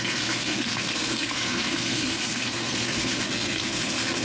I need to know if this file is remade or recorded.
remade